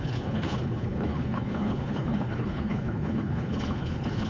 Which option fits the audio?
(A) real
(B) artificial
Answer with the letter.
B